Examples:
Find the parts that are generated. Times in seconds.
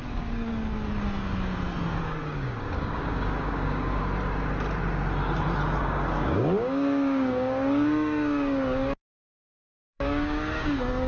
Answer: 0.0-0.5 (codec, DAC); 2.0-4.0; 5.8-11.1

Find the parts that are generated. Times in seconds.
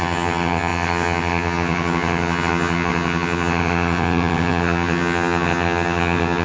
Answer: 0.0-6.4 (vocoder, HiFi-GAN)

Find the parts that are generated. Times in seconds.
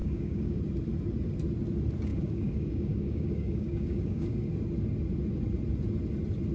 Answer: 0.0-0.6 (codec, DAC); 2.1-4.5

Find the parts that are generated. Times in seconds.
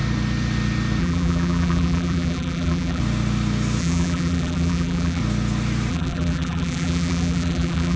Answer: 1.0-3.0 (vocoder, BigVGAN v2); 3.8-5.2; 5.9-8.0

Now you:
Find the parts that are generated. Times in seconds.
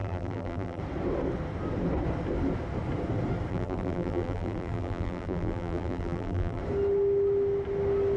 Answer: 0.0-0.8 (vocoder, BigVGAN v2); 3.5-6.6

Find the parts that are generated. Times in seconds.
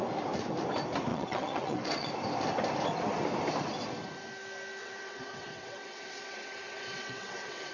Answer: 1.1-2.1 (vocoder, WaveNeXt); 4.8-7.7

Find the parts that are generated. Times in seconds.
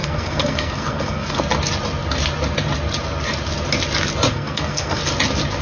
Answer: 0.0-1.4 (codec, SNAC); 4.3-5.0